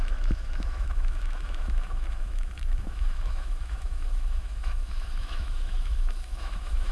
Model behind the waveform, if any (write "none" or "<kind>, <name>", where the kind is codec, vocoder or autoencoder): autoencoder, DAC-VAE